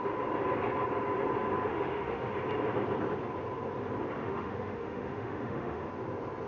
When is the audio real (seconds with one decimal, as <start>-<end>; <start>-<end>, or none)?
0.0-1.7; 2.3-4.2; 5.9-6.5